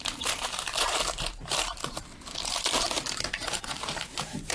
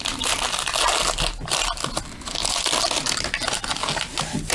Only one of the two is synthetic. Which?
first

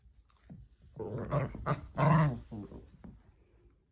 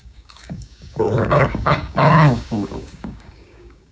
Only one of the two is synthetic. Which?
second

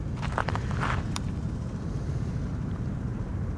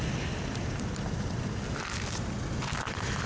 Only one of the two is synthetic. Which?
first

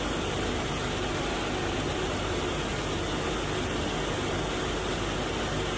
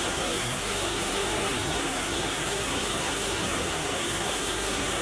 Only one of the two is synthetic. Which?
second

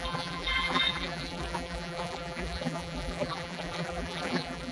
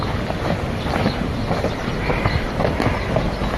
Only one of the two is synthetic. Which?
first